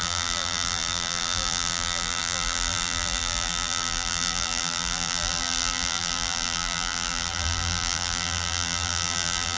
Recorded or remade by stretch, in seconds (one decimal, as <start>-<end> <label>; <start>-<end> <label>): 0.0-9.6 remade